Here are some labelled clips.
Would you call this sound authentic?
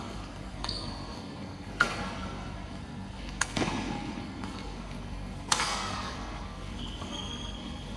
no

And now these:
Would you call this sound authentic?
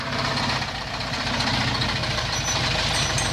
yes